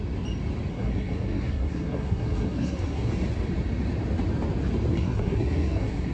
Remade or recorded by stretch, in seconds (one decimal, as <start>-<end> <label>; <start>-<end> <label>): 0.0-0.7 recorded; 0.7-3.1 remade; 3.1-4.9 recorded; 4.9-6.1 remade